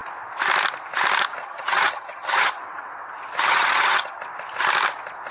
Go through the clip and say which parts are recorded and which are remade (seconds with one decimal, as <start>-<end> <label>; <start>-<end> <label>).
0.0-1.4 recorded; 1.4-2.6 remade; 2.6-3.4 recorded; 3.4-4.2 remade; 4.2-5.3 recorded